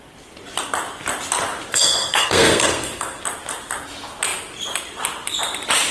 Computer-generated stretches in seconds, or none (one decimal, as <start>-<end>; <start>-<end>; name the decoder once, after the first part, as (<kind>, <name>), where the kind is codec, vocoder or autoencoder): 1.7-3.2 (codec, SNAC)